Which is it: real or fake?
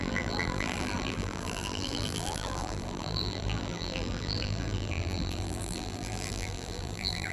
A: fake